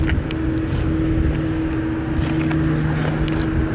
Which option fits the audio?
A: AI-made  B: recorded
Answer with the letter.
B